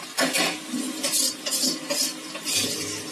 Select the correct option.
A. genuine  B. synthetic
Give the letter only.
A